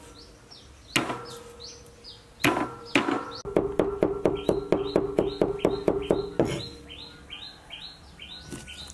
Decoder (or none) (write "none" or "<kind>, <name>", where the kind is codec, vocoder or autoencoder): none